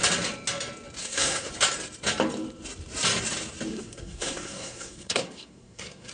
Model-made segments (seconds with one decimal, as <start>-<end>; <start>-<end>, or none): 1.0-1.5; 3.7-6.1